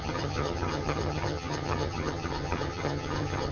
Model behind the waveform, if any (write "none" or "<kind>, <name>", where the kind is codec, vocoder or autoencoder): vocoder, HiFi-GAN